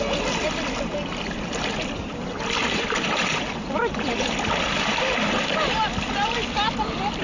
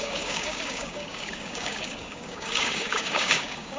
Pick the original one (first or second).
first